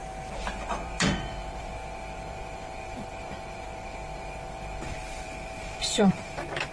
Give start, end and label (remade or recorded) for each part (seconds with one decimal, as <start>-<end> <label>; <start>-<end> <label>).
0.0-0.6 recorded; 0.6-6.7 remade